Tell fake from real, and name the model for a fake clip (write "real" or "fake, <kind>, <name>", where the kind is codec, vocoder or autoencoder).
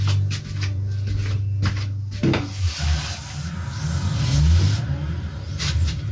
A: real